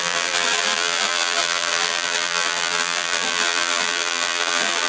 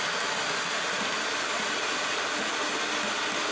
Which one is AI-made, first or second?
first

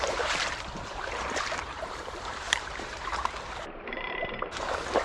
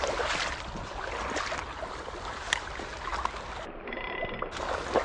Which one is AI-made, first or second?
first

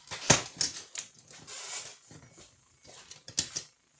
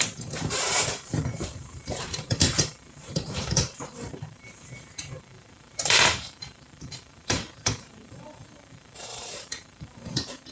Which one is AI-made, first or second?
second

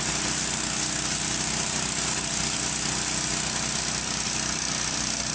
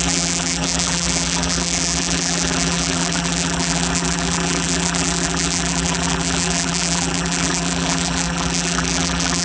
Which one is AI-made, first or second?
second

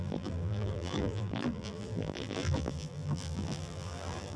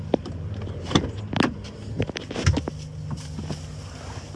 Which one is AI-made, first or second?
first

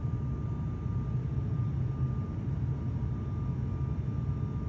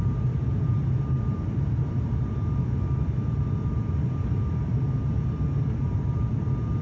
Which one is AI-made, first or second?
second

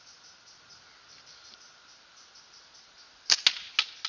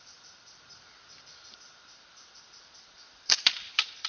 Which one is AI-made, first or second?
second